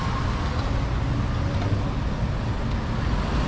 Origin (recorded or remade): recorded